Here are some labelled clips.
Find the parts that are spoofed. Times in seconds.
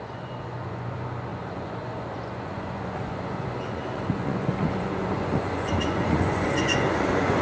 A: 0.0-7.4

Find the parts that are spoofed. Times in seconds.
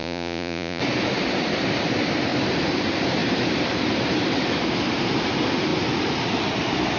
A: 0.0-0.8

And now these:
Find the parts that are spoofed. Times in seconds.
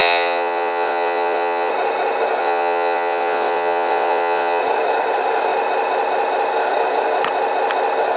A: 0.0-1.7; 2.4-4.6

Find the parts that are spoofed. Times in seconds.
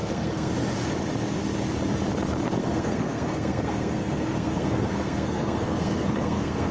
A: 0.0-0.5; 2.6-6.7